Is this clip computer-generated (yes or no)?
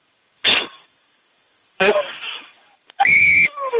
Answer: yes